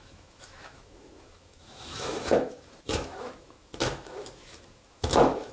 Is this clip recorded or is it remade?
remade